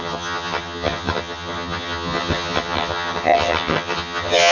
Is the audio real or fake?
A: fake